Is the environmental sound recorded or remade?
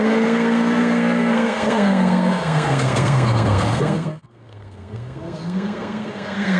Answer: remade